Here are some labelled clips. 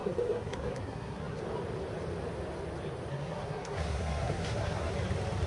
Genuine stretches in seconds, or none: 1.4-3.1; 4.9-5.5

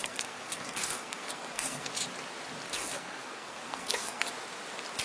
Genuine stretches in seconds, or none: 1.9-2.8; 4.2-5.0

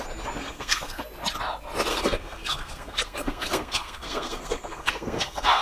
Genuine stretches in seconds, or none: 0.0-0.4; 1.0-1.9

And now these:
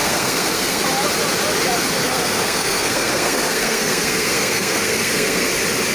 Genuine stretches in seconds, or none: 0.8-2.0; 5.5-5.9

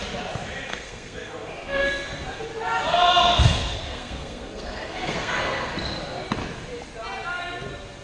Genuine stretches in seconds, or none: 0.0-0.7; 2.4-2.9; 5.7-8.0

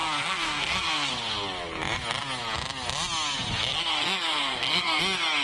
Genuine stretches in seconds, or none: 1.1-3.7; 5.0-5.4

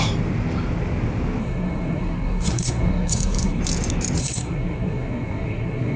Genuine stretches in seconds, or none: 0.0-1.4; 3.6-4.2

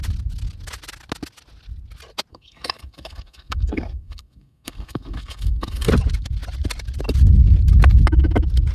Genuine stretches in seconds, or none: 0.0-2.3; 5.9-8.7